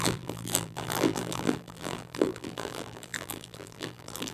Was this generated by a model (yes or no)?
yes